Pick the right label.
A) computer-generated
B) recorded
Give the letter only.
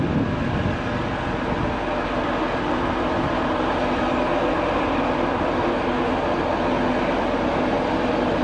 B